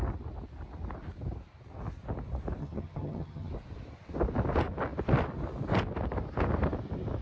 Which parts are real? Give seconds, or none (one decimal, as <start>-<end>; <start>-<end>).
0.0-2.6; 3.5-7.2